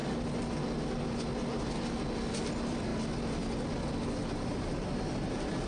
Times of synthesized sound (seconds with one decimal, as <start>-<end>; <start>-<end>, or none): 4.2-4.9